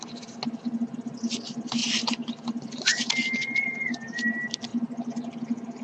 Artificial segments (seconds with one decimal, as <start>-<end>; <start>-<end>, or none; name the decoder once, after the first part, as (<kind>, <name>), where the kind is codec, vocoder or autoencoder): none